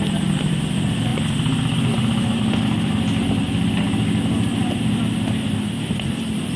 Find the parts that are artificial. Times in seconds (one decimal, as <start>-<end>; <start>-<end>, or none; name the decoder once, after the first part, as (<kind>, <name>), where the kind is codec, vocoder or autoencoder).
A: none